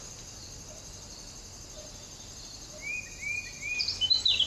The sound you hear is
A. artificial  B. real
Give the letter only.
B